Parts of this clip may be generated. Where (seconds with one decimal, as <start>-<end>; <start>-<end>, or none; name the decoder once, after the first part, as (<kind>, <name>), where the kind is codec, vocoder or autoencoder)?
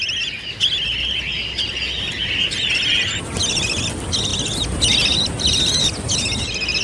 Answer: 2.2-2.8 (vocoder, BigVGAN v2)